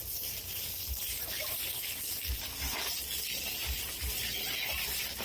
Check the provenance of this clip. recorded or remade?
recorded